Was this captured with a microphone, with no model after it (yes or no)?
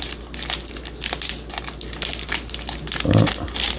yes